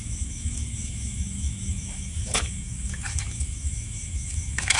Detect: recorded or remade remade